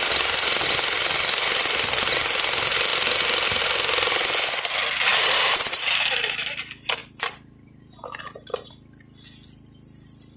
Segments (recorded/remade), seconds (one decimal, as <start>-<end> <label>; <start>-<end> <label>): 0.0-5.1 recorded; 5.1-6.5 remade; 6.5-7.0 recorded; 7.0-8.7 remade; 8.7-10.4 recorded